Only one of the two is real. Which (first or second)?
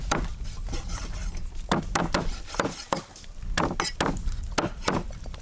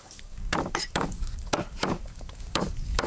first